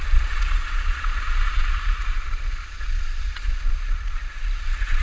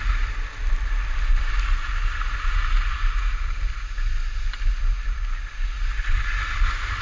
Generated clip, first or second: first